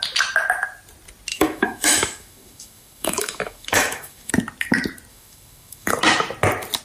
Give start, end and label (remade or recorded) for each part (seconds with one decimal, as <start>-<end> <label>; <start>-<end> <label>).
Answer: 0.0-1.3 recorded; 1.3-4.3 remade; 4.3-5.1 recorded; 5.1-5.9 remade; 5.9-6.8 recorded